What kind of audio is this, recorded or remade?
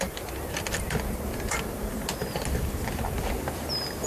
remade